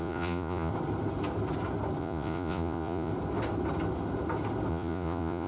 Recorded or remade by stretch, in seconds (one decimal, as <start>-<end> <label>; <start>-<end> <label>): 0.0-0.7 remade; 0.7-2.0 recorded; 2.0-3.1 remade; 3.1-4.7 recorded; 4.7-5.5 remade